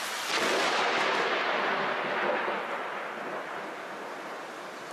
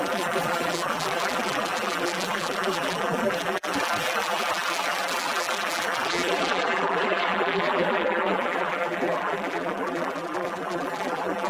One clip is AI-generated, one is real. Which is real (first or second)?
first